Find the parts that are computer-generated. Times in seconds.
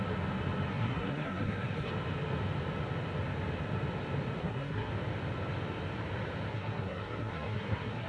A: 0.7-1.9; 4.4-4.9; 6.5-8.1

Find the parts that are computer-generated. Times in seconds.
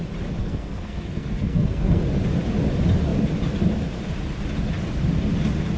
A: 0.4-2.0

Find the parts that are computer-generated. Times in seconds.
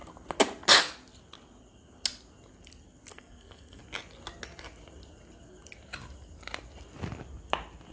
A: 3.1-3.8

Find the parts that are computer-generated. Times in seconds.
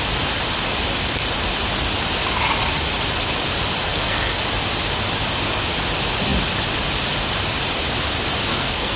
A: 3.9-4.4; 8.5-9.0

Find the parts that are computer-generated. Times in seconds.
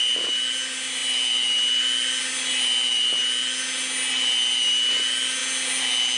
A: none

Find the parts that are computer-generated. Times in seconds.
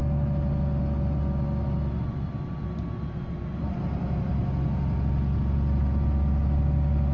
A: none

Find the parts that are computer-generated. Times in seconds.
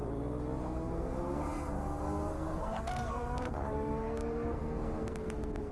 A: 0.6-5.7